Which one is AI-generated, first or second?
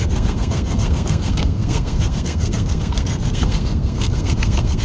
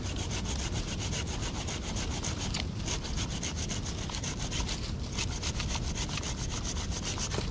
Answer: first